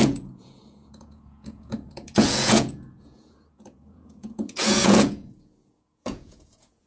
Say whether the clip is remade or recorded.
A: remade